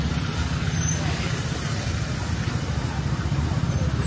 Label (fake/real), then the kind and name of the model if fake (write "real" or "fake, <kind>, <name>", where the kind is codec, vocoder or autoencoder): fake, vocoder, BigVGAN v2